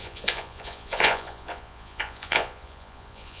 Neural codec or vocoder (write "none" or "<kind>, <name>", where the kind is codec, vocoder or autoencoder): vocoder, Vocos